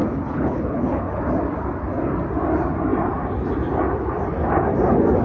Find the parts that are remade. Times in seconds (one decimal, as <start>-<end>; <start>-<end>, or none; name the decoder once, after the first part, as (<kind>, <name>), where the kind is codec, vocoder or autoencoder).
0.0-1.2 (codec, HILCodec)